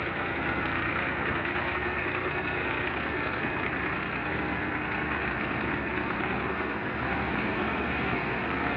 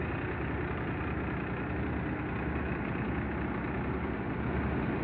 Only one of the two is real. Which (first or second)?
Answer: second